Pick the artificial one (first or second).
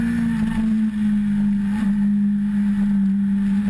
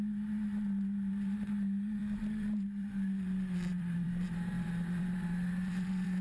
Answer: second